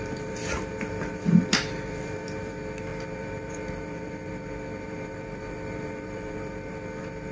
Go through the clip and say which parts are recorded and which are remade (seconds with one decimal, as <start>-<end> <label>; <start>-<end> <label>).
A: 0.0-7.3 remade